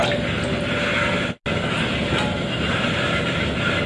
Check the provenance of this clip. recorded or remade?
recorded